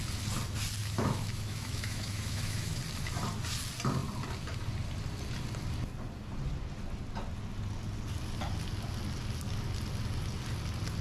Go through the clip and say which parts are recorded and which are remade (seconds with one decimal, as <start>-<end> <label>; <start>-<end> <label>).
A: 0.0-0.8 recorded; 0.8-2.8 remade; 2.8-11.0 recorded